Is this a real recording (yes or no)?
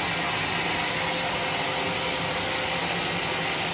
yes